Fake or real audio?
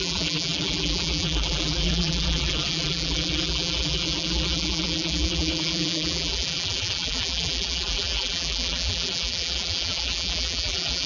fake